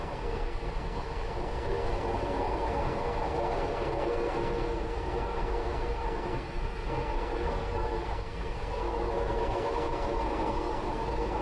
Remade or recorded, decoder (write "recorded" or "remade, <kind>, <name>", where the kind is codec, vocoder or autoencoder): remade, codec, SNAC